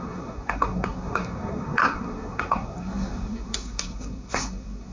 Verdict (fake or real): fake